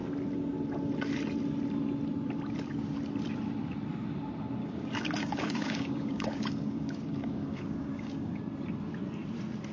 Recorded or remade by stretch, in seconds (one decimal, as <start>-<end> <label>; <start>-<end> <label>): 0.0-4.6 recorded; 4.6-8.4 remade; 8.4-9.7 recorded